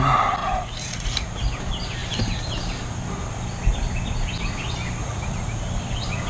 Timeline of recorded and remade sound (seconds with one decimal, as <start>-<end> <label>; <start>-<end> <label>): 0.0-0.4 recorded; 0.4-1.4 remade; 1.4-5.0 recorded; 5.0-5.6 remade; 5.6-6.3 recorded